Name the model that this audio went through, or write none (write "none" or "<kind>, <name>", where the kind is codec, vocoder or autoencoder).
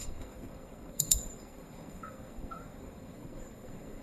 codec, SNAC